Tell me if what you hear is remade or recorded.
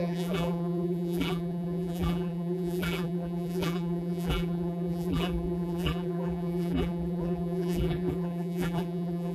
remade